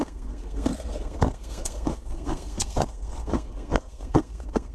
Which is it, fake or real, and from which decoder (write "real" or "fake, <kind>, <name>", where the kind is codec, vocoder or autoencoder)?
fake, codec, SNAC